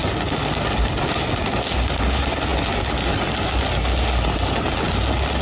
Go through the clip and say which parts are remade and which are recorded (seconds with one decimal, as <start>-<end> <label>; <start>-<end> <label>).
0.0-5.4 recorded